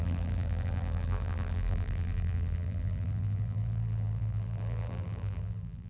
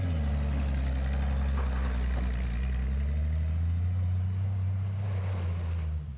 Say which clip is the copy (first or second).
first